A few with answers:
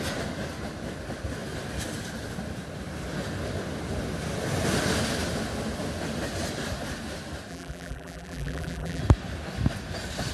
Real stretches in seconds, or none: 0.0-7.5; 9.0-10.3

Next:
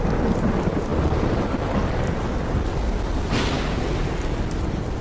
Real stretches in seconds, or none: 0.0-5.0